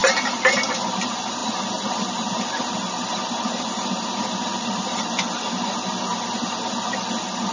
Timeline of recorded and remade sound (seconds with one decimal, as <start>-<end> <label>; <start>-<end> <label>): 0.0-0.8 remade; 0.8-1.4 recorded; 1.4-2.0 remade; 2.0-4.5 recorded; 4.5-5.3 remade; 5.3-7.5 recorded